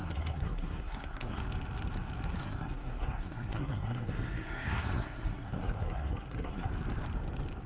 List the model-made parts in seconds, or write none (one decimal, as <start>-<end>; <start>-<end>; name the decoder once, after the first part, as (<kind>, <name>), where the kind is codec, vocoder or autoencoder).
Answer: 0.0-1.4 (codec, SNAC); 2.4-6.7